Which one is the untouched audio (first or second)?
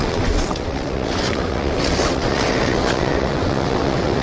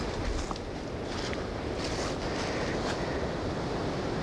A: second